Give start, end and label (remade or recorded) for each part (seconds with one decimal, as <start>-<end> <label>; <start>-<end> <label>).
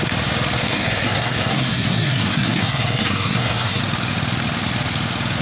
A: 0.0-0.6 recorded; 0.6-3.8 remade; 3.8-5.4 recorded